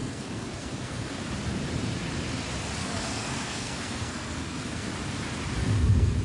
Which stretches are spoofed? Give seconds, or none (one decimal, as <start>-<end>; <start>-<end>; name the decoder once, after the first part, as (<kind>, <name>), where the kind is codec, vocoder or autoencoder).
0.0-1.2 (codec, SNAC); 2.8-4.9; 5.6-6.2